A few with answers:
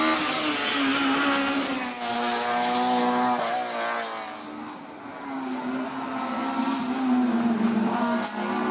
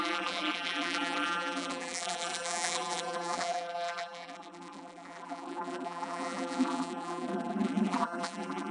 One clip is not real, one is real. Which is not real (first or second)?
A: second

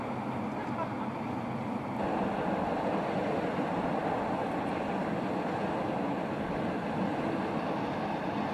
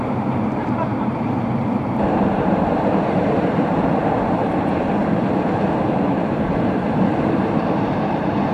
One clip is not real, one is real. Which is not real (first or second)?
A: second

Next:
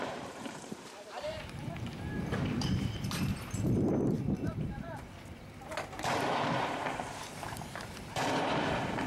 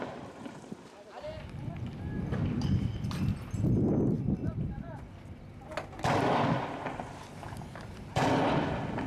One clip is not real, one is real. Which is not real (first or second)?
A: first